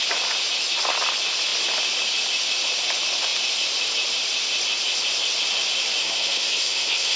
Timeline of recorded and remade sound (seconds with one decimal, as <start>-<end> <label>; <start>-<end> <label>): 0.0-6.0 recorded; 6.0-7.2 remade